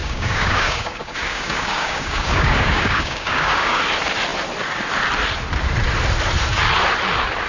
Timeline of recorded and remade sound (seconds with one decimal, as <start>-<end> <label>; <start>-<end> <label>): 0.0-3.8 remade; 3.8-7.5 recorded